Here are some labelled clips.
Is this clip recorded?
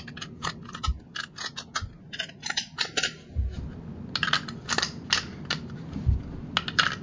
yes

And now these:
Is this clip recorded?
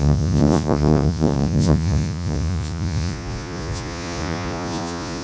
no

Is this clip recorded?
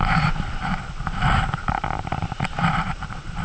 no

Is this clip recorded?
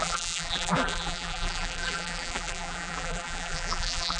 no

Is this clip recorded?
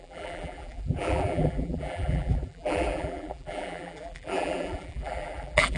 no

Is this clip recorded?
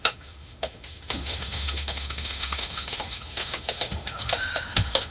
no